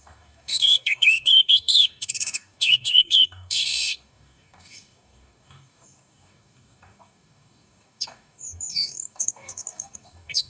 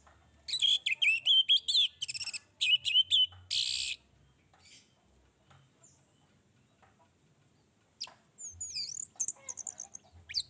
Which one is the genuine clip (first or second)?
second